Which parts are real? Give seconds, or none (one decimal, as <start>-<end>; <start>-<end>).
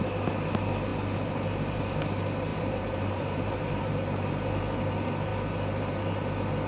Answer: 0.0-2.5; 4.3-6.7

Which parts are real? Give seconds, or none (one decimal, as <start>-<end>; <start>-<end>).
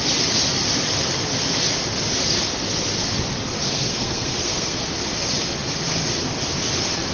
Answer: 0.0-3.6; 4.8-7.1